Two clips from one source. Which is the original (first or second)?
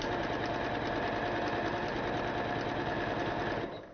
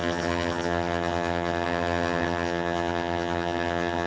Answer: first